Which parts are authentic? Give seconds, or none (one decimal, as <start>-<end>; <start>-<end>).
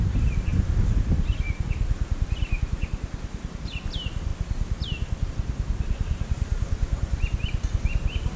0.0-8.4